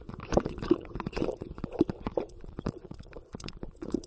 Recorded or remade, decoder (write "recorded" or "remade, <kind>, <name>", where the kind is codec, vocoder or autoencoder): remade, vocoder, Vocos